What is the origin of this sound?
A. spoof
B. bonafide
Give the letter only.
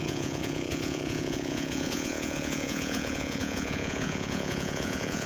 A